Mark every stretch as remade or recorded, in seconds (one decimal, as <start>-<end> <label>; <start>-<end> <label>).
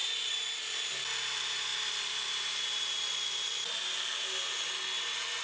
0.0-0.7 remade; 0.7-5.4 recorded